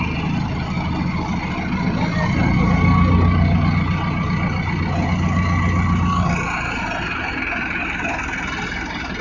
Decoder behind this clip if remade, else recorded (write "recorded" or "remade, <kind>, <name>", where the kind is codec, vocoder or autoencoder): recorded